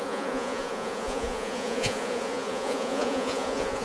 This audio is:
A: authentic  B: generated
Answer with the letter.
B